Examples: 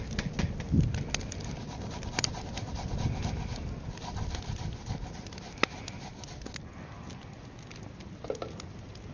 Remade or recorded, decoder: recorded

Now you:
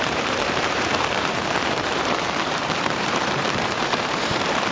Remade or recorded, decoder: remade, vocoder, BigVGAN v2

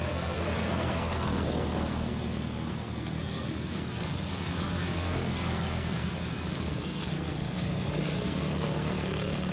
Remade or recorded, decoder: remade, codec, SNAC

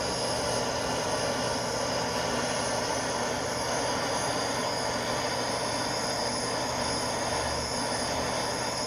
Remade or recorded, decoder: recorded